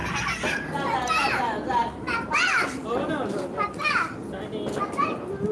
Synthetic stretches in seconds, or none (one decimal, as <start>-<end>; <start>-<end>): none